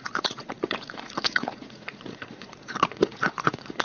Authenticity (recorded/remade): remade